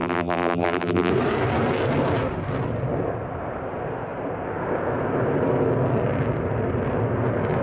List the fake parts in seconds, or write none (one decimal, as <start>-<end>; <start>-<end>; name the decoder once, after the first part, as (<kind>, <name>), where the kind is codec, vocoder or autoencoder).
0.0-1.1 (vocoder, BigVGAN v2)